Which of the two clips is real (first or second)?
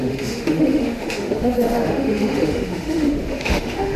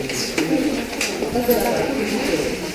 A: second